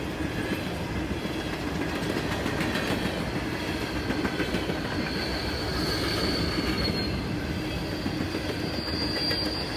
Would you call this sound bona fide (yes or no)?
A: yes